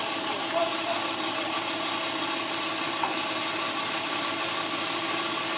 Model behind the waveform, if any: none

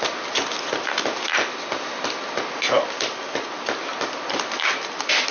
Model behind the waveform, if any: none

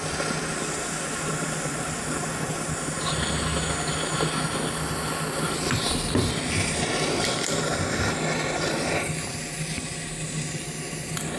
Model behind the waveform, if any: none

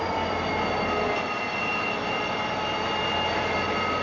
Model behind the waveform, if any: none